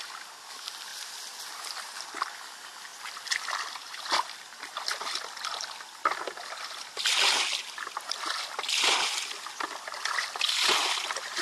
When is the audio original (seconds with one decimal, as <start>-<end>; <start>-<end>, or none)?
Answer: 0.0-11.4

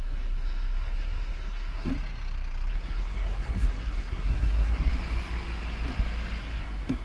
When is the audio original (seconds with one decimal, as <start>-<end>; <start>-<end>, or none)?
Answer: 1.9-2.7; 4.9-6.4

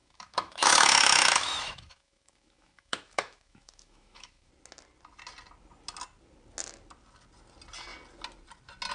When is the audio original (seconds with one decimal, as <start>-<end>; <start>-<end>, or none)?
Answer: 4.5-8.9

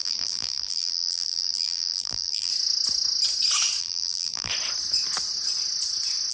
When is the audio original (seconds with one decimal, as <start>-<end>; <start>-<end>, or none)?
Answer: 2.5-3.8; 4.5-6.3

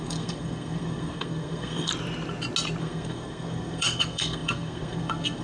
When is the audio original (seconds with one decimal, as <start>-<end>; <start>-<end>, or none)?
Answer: 1.9-2.8

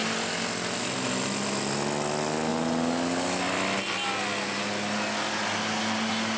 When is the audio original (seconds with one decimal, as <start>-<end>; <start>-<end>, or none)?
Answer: 0.0-6.4